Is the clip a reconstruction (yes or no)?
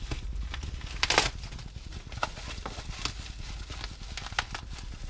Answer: no